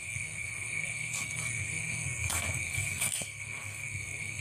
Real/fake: fake